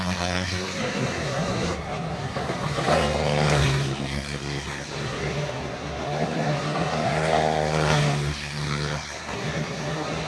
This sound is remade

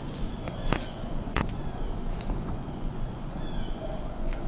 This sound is remade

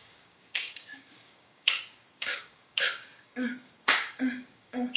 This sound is remade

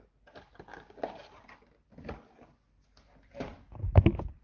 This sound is recorded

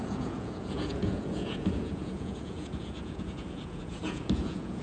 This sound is remade